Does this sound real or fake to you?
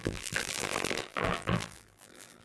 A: fake